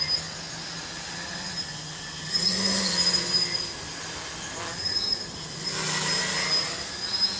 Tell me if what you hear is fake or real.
real